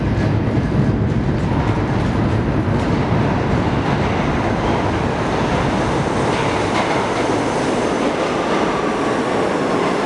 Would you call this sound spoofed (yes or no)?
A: no